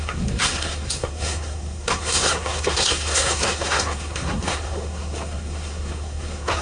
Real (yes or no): no